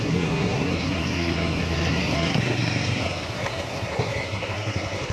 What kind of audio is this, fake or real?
fake